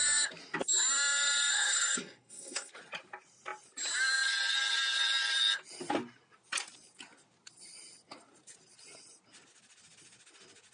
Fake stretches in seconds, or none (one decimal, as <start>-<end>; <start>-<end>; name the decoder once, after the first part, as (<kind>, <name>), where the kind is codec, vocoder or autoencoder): 1.5-2.7 (codec, SNAC)